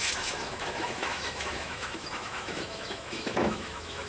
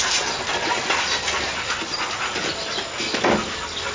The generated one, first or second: first